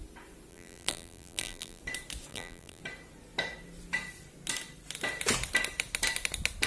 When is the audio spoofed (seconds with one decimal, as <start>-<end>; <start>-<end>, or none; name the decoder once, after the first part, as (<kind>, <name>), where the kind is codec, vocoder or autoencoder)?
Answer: 0.5-1.8 (vocoder, BigVGAN v2); 2.3-2.8